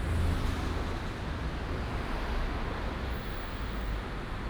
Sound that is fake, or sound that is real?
real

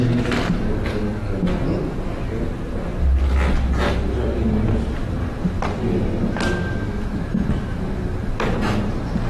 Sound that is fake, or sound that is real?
real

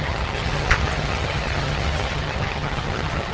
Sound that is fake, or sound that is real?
fake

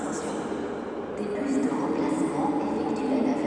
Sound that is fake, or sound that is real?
real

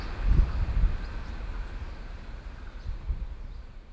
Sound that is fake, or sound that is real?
real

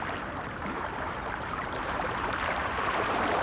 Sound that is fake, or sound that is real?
fake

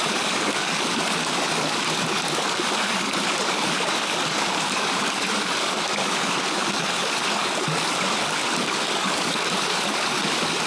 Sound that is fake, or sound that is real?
fake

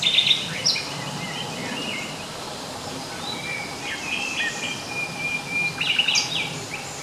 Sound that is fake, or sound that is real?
real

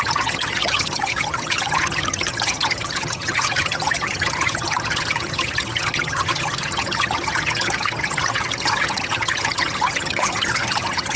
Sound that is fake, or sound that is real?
fake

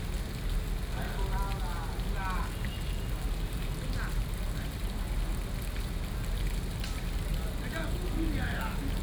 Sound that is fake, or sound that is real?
real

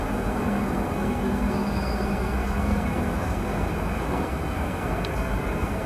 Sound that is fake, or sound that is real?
fake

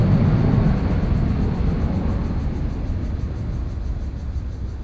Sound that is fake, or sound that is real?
real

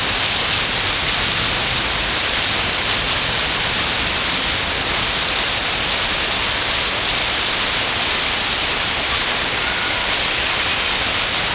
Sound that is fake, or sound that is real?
real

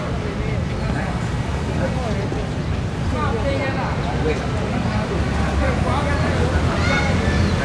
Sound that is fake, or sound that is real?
real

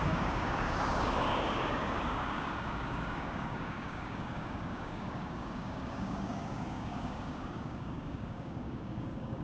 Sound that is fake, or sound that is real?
fake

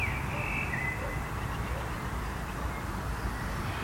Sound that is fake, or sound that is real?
real